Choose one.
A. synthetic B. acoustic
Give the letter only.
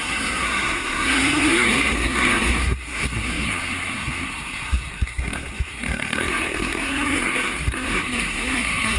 A